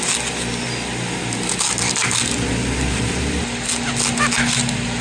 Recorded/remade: recorded